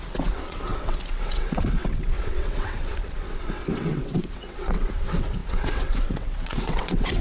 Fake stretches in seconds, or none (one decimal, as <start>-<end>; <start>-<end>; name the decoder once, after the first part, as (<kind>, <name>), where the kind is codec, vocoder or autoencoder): 0.0-7.2 (vocoder, WaveNeXt)